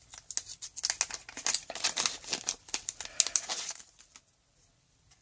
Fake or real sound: real